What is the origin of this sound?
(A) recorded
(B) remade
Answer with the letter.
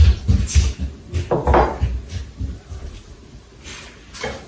A